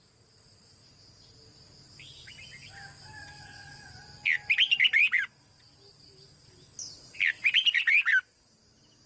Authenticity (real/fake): real